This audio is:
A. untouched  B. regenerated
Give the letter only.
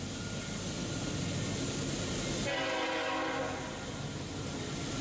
A